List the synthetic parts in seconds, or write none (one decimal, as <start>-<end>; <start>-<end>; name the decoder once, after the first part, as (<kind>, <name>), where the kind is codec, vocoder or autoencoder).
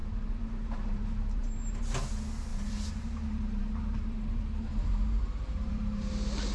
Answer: 0.0-1.8 (vocoder, BigVGAN v2); 2.5-6.1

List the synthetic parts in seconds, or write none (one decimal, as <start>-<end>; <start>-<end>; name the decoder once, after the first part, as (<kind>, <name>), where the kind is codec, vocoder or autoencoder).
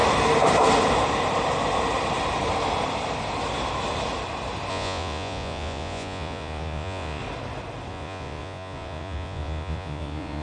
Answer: 4.7-7.2 (vocoder, Vocos); 7.9-10.4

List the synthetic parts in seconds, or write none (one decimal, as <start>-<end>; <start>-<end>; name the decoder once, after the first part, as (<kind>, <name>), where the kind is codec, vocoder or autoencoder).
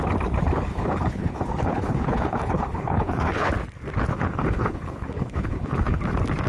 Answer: 0.7-3.5 (codec, HILCodec); 4.1-6.0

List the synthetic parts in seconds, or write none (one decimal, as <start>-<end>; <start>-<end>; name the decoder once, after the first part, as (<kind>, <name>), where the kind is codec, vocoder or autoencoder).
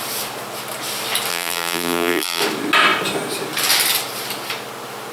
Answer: 1.3-2.4 (vocoder, BigVGAN v2)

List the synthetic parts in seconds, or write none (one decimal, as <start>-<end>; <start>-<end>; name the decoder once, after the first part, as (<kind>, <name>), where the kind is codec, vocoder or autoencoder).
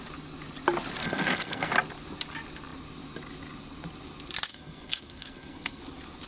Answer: 1.0-1.7 (codec, SNAC); 4.5-5.8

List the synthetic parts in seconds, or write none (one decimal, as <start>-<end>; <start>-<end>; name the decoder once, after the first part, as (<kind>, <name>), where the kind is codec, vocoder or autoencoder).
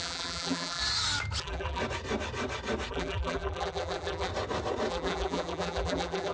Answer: 0.0-0.8 (vocoder, BigVGAN v2); 1.4-1.8; 2.9-4.3; 4.9-6.3